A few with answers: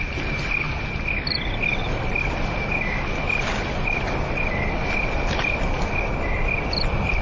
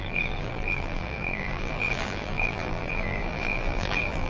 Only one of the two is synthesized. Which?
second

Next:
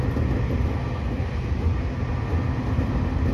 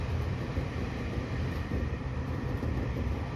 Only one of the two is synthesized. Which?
second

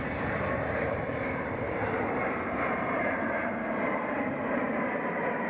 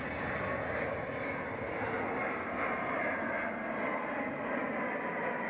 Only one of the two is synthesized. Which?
first